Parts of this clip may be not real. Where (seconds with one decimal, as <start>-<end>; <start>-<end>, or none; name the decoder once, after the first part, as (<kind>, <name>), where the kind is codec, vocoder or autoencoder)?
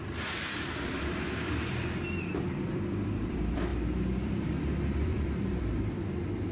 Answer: 0.0-6.5 (vocoder, BigVGAN v2)